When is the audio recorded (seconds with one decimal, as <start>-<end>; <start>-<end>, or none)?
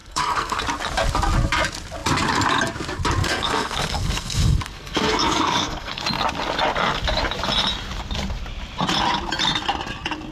0.6-3.2; 6.0-10.3